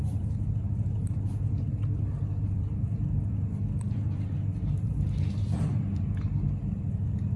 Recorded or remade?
recorded